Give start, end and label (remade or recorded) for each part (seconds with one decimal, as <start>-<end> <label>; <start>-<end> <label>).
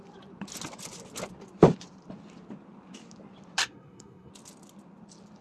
0.0-3.6 recorded; 3.6-4.3 remade; 4.3-5.4 recorded